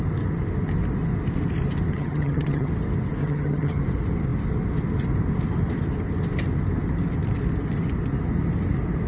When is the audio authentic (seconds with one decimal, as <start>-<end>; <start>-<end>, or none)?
0.0-1.9; 2.7-3.2; 3.8-9.1